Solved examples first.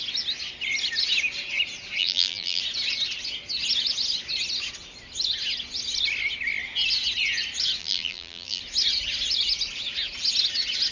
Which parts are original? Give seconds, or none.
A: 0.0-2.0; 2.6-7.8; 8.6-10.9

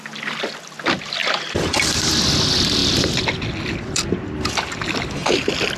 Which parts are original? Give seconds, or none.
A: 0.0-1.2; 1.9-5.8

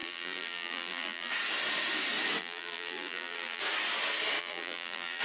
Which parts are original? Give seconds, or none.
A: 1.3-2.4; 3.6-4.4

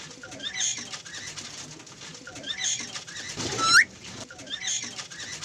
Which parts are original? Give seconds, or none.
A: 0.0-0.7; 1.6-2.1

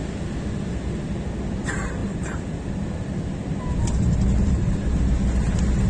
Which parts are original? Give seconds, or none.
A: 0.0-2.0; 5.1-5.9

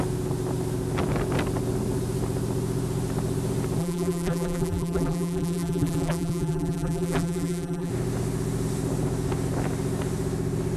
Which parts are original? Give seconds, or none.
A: 0.0-3.8; 7.9-10.8